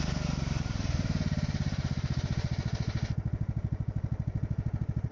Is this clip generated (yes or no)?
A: yes